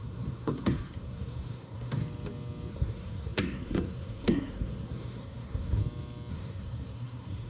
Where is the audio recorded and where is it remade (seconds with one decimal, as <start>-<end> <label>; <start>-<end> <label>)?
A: 0.0-2.0 remade; 2.0-2.7 recorded; 2.7-5.8 remade; 5.8-6.3 recorded; 6.3-7.5 remade